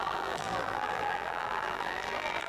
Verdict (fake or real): fake